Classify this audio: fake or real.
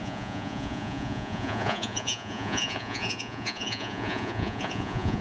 fake